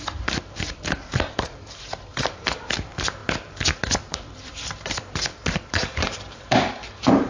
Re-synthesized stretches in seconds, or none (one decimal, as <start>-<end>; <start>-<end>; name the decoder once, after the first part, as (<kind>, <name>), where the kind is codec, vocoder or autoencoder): 0.0-3.2 (vocoder, BigVGAN v2); 4.1-5.3; 5.9-7.3